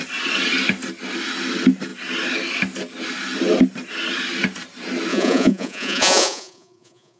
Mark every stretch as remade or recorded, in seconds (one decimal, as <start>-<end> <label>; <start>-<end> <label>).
0.0-5.1 recorded; 5.1-7.2 remade